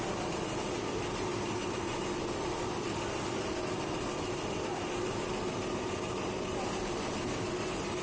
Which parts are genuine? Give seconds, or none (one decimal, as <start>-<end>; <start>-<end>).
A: 0.0-8.0